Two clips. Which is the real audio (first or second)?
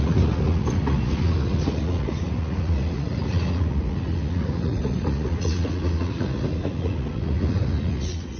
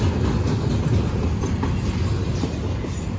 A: second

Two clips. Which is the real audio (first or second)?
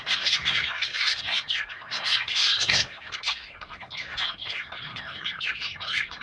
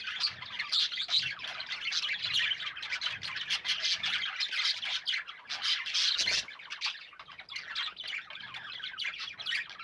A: second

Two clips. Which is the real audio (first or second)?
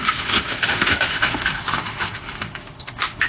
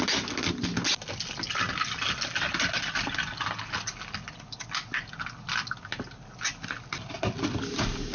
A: second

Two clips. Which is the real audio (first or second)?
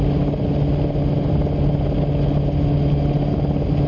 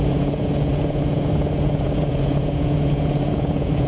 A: first